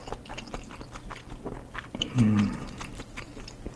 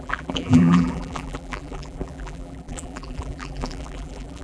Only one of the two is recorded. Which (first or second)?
first